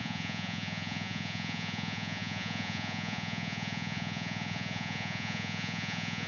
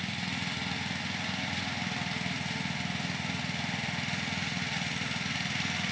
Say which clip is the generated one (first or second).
first